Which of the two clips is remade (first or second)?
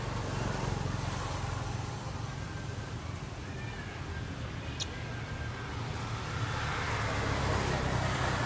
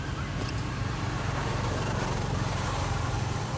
second